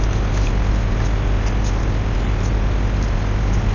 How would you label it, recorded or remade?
recorded